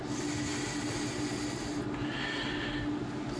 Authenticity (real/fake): real